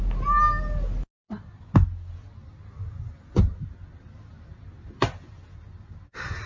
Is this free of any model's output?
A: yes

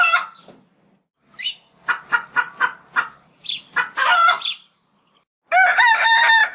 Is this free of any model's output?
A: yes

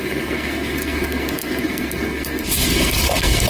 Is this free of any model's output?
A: no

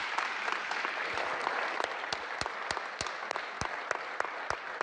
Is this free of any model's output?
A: yes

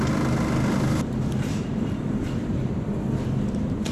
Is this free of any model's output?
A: yes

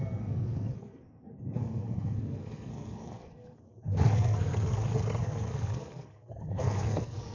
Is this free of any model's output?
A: no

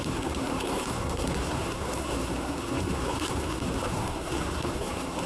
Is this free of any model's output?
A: no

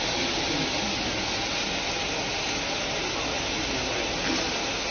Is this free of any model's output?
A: yes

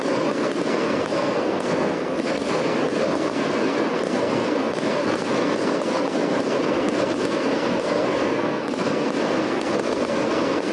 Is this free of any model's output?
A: no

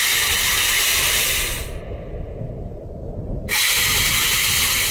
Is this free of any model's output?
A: yes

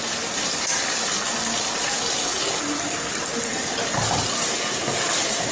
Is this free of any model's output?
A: yes